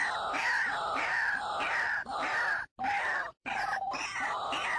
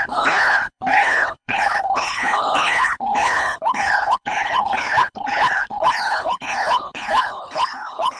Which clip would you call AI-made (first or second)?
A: second